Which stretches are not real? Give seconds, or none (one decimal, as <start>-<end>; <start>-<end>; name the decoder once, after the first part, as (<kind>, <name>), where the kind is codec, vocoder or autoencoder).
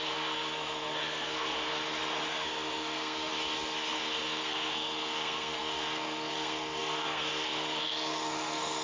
0.0-1.7 (codec, SNAC); 2.3-3.3; 3.9-8.8